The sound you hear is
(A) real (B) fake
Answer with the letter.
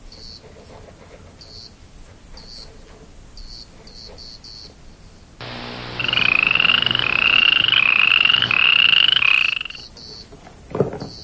A